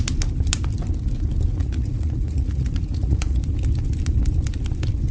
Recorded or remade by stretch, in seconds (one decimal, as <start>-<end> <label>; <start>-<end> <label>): 0.0-1.6 recorded; 1.6-3.4 remade; 3.4-5.1 recorded

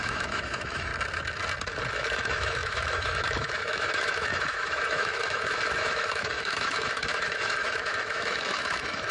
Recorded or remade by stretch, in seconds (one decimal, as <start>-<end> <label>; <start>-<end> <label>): 0.0-0.9 remade; 0.9-1.9 recorded; 1.9-9.1 remade

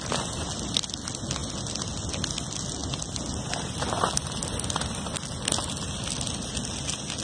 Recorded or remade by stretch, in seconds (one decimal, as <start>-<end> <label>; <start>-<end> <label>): 0.0-7.2 recorded

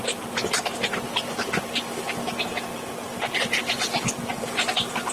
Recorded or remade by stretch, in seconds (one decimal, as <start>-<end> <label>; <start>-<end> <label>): 0.0-4.3 recorded; 4.3-5.1 remade

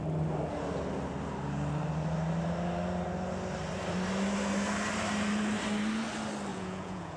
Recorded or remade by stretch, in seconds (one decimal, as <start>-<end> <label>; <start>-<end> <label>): 0.0-6.5 recorded; 6.5-7.2 remade

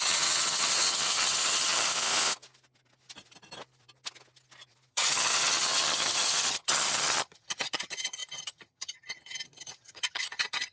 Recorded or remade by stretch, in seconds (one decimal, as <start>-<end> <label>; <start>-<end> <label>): 0.0-1.9 remade; 1.9-4.9 recorded; 4.9-10.7 remade